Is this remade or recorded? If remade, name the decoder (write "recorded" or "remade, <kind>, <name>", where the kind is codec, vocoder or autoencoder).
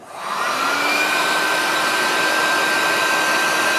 remade, vocoder, BigVGAN v2